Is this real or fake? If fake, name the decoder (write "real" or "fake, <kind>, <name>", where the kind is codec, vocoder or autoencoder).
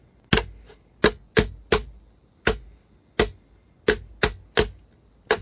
real